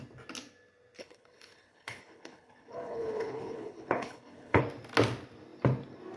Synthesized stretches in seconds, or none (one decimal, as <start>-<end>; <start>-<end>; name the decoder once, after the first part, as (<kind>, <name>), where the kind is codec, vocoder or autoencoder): 1.0-4.6 (codec, HILCodec)